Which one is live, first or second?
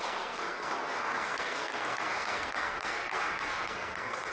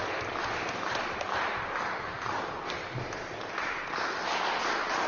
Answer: second